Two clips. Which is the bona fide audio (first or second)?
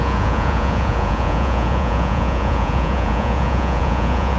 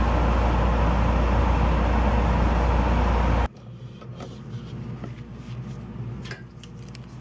second